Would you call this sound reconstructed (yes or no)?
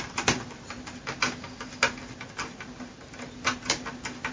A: no